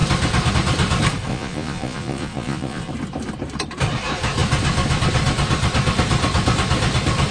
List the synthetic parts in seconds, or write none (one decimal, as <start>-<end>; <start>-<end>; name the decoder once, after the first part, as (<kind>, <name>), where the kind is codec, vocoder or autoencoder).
1.3-2.9 (vocoder, Vocos)